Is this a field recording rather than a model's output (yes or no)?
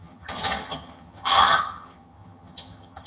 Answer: no